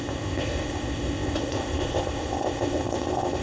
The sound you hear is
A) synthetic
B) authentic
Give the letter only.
A